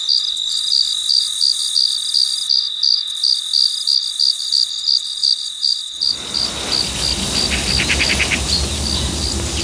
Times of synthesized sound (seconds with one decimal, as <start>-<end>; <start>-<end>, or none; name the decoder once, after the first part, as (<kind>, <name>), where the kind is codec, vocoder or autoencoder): none